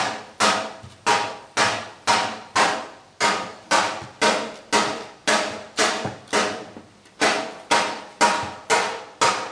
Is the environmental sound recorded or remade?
recorded